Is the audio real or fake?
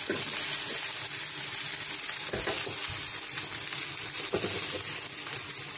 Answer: real